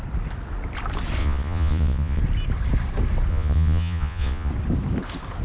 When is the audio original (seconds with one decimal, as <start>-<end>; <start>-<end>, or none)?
0.0-1.2; 2.2-3.3; 4.5-5.4